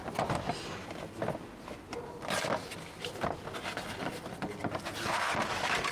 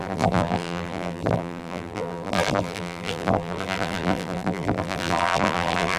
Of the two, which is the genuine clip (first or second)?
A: first